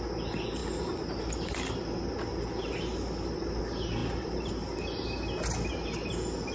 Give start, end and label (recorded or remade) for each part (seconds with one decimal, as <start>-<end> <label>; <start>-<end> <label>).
0.0-4.0 recorded; 4.0-4.5 remade; 4.5-6.5 recorded